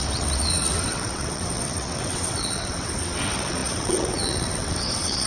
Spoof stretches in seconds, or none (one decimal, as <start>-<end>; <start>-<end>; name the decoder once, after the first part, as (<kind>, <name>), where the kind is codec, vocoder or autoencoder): 0.0-5.3 (vocoder, WaveNeXt)